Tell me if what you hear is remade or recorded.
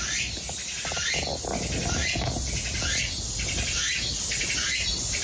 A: recorded